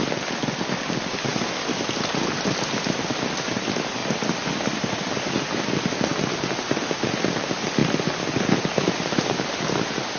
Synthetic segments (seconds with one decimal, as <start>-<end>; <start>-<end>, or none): none

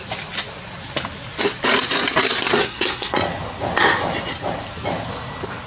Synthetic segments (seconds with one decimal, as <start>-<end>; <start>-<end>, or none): 2.6-3.1

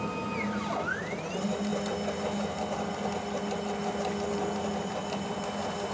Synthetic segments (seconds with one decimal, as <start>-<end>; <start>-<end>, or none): none

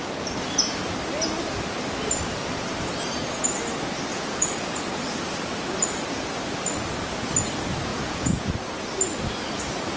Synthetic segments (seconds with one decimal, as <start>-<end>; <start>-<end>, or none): 4.1-4.7; 7.9-8.4

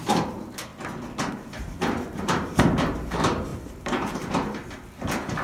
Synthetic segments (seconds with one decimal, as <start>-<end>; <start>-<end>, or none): 0.0-0.7; 1.3-4.6